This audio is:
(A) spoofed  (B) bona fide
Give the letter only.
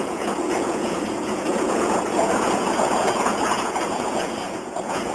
A